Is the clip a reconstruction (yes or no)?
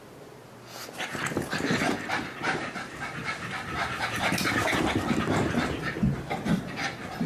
no